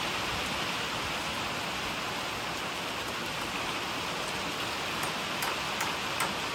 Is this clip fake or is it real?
real